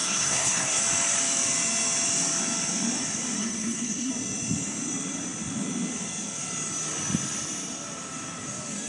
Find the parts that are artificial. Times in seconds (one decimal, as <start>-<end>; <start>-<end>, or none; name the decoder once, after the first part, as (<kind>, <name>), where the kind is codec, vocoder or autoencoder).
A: 0.0-0.8 (codec, SNAC); 3.4-4.1